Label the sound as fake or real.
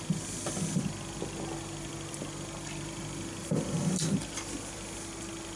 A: real